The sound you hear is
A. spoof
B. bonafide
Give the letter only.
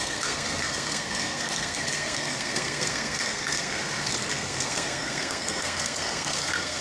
A